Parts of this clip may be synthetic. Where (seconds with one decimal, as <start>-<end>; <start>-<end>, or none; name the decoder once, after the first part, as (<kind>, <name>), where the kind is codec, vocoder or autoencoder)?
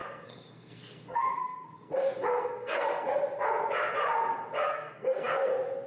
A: 0.0-3.1 (codec, SNAC); 4.7-5.5